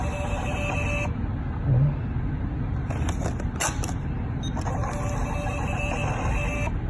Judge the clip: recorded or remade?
recorded